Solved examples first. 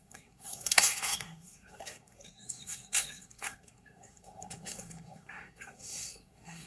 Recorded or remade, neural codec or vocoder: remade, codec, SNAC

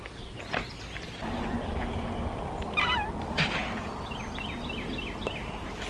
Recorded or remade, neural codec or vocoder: recorded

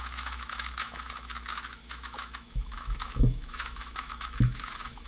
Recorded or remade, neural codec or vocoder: remade, autoencoder, DAC-VAE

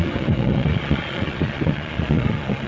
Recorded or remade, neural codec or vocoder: remade, vocoder, Vocos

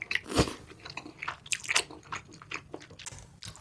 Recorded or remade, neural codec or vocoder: recorded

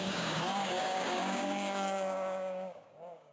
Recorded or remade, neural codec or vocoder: remade, codec, DAC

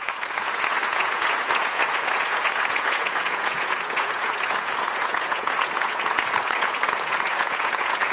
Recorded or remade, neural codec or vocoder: remade, vocoder, Vocos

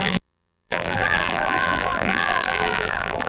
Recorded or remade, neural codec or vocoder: remade, vocoder, BigVGAN v2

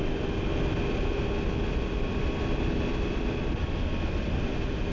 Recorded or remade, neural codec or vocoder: recorded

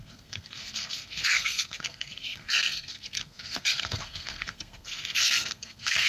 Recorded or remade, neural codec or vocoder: remade, codec, SNAC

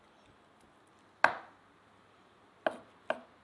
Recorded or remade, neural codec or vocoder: recorded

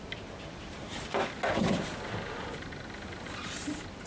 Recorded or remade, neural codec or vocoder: recorded